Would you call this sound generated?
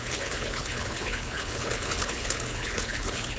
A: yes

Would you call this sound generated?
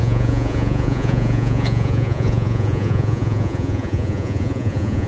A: yes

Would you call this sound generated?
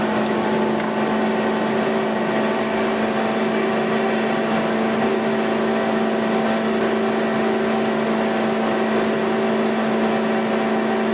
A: no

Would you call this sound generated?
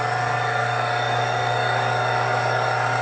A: yes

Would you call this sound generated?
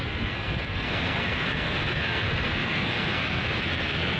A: yes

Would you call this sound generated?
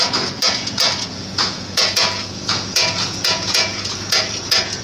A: yes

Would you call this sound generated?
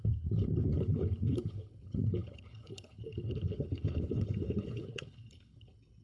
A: yes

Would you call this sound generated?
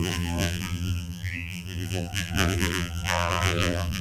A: yes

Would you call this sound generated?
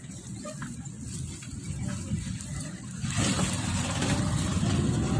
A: no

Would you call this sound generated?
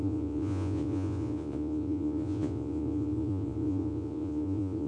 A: yes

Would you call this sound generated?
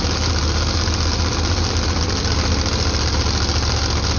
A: no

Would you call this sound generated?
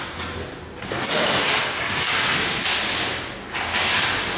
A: no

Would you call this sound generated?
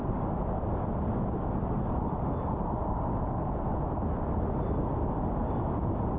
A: no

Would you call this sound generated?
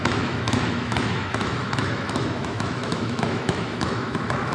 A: yes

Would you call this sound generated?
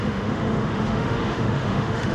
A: yes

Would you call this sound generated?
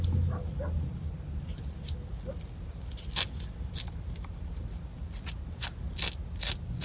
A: no